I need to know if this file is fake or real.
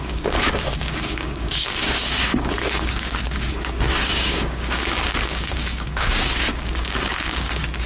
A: fake